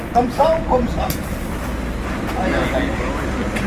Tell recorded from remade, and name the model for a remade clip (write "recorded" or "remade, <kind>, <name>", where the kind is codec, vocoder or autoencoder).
recorded